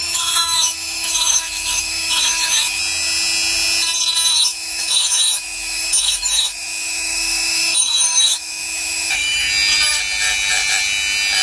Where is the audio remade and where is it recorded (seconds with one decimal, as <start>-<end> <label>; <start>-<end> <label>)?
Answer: 0.0-2.8 remade; 2.8-4.3 recorded; 4.3-9.5 remade; 9.5-11.4 recorded